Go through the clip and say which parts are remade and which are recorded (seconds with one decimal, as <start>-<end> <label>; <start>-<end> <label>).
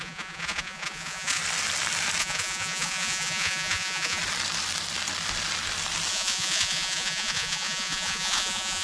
0.0-1.4 remade; 1.4-2.2 recorded; 2.2-4.2 remade; 4.2-6.1 recorded; 6.1-8.8 remade